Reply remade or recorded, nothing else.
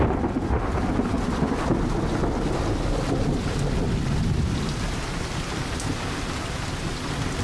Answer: recorded